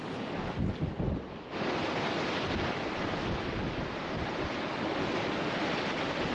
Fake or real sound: real